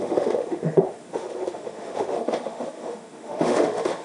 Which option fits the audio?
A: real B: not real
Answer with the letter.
B